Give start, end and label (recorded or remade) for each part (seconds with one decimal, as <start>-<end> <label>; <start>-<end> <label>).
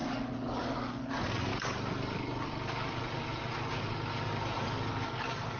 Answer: 0.0-1.5 remade; 1.5-4.9 recorded; 4.9-5.6 remade